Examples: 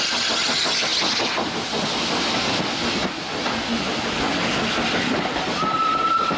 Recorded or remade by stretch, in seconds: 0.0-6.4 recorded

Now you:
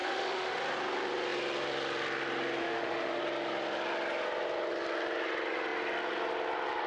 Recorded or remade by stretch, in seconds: 0.0-0.6 remade; 0.6-2.6 recorded; 2.6-3.2 remade; 3.2-6.9 recorded

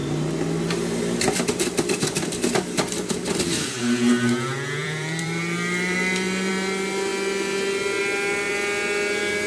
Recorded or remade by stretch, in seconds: 0.0-4.8 recorded; 4.8-6.5 remade; 6.5-9.5 recorded

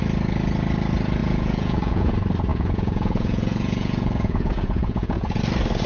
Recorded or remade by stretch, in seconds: 0.0-1.2 recorded; 1.2-2.1 remade; 2.1-2.5 recorded; 2.5-5.4 remade; 5.4-5.9 recorded

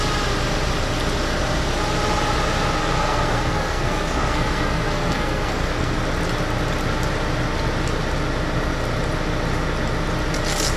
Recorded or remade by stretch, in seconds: 0.0-2.8 recorded; 2.8-6.0 remade; 6.0-10.8 recorded

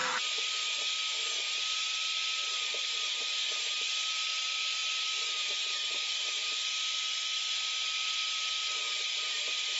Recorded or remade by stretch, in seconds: 0.0-4.8 recorded; 4.8-6.6 remade; 6.6-9.8 recorded

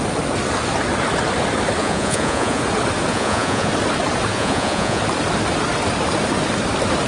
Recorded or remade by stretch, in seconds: 0.0-1.8 recorded; 1.8-2.6 remade; 2.6-3.1 recorded; 3.1-3.7 remade; 3.7-4.3 recorded; 4.3-5.0 remade; 5.0-7.1 recorded